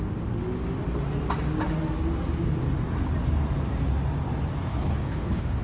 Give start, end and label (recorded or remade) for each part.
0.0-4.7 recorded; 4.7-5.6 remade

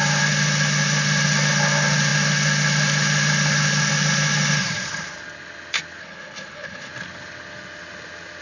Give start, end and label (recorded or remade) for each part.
0.0-6.0 recorded; 6.0-6.9 remade; 6.9-8.4 recorded

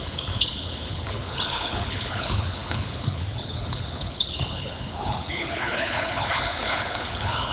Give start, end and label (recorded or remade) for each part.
0.0-7.5 remade

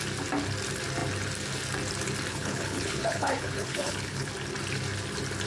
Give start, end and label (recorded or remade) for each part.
0.0-2.3 recorded; 2.3-4.3 remade; 4.3-5.5 recorded

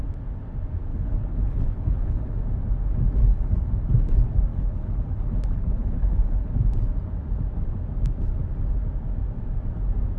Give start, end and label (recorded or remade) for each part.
0.0-0.9 recorded; 0.9-2.4 remade; 2.4-3.2 recorded; 3.2-3.7 remade; 3.7-4.5 recorded; 4.5-6.5 remade; 6.5-10.2 recorded

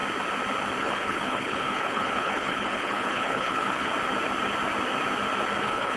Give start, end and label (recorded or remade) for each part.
0.0-0.8 recorded; 0.8-3.9 remade; 3.9-5.6 recorded; 5.6-6.0 remade

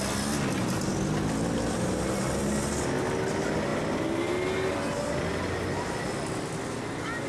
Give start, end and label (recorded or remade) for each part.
0.0-7.3 recorded